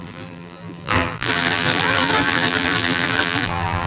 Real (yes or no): no